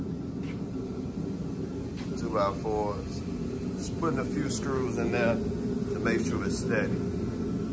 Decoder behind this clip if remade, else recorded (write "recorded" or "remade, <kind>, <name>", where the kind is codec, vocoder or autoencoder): recorded